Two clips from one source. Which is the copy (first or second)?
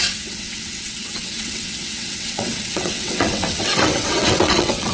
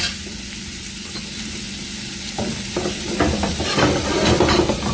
first